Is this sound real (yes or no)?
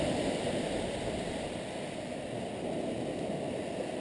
yes